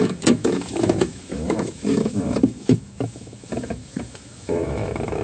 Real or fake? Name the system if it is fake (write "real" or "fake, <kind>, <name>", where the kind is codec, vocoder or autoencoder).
fake, autoencoder, DAC-VAE